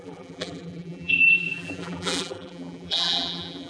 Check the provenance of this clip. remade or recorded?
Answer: remade